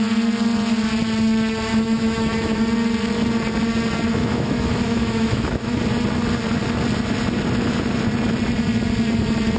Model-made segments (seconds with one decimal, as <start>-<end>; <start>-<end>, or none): 1.7-2.6; 4.1-5.8